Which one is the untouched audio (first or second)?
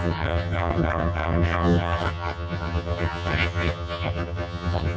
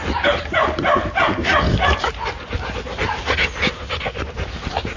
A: second